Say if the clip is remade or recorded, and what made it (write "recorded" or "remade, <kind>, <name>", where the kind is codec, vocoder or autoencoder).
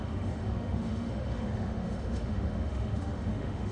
remade, autoencoder, DAC-VAE